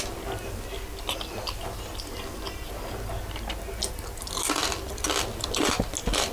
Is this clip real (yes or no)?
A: yes